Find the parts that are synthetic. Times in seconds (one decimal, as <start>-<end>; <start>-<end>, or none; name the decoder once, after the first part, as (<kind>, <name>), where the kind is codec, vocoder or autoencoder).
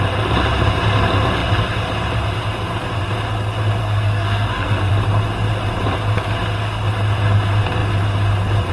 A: 3.8-4.9 (codec, SNAC)